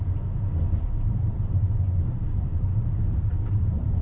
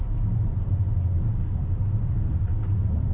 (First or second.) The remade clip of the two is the first